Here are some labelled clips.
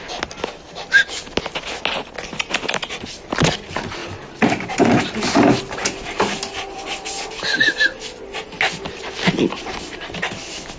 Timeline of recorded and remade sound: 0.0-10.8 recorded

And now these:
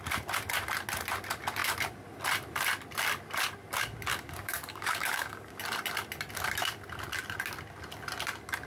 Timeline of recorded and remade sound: 0.0-4.1 recorded; 4.1-5.6 remade; 5.6-8.7 recorded

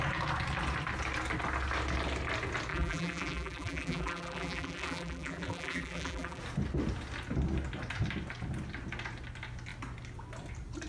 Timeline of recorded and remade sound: 0.0-2.7 recorded; 2.7-6.4 remade; 6.4-10.9 recorded

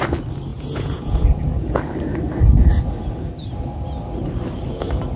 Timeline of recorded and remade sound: 0.0-0.5 recorded; 0.5-1.8 remade; 1.8-5.2 recorded

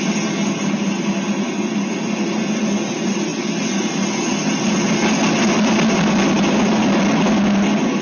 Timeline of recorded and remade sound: 0.0-3.3 recorded; 3.3-4.7 remade; 4.7-8.0 recorded